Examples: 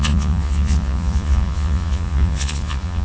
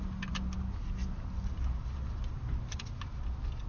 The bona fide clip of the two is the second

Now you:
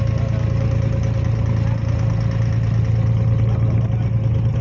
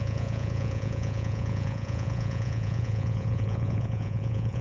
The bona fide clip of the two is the first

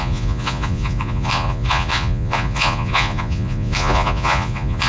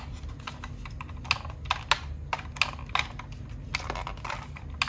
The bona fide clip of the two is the second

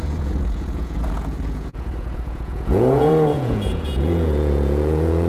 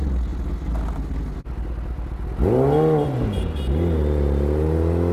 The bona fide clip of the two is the second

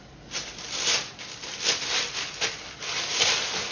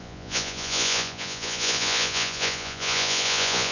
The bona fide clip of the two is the first